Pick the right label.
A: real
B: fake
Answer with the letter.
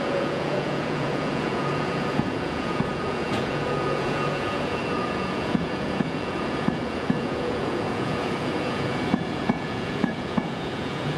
B